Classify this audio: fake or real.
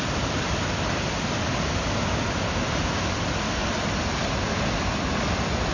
real